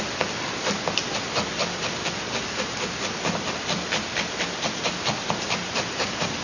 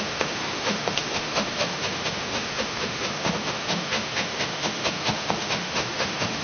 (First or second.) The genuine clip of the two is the first